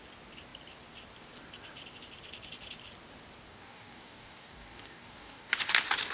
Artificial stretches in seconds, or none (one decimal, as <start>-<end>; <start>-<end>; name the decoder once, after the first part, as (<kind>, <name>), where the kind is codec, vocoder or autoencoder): 3.5-5.5 (codec, DAC)